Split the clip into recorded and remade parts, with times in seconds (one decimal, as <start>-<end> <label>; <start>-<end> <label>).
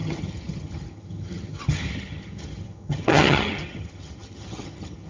0.0-5.1 remade